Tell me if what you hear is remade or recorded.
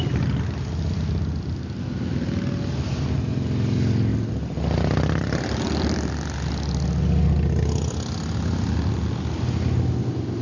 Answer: recorded